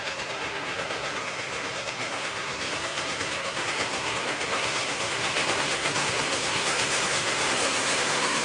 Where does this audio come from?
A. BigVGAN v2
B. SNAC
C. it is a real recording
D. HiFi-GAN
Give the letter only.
B